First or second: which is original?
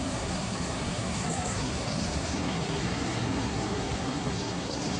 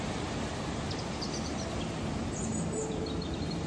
second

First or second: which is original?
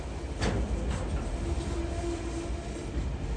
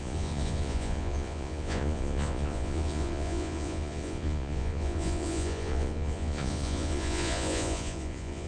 first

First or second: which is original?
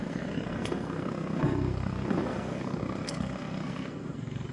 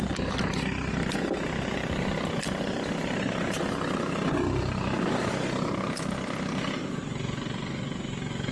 second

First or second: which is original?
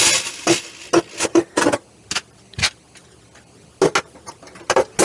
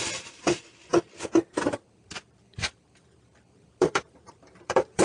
first